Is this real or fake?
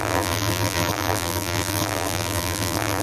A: fake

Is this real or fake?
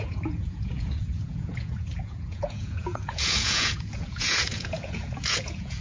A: fake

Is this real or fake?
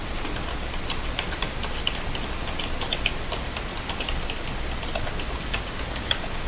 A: real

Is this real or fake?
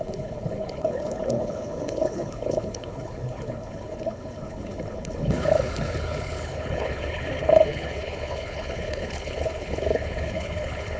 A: fake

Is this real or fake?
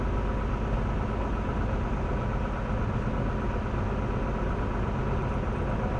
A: real